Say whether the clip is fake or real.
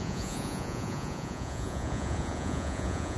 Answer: fake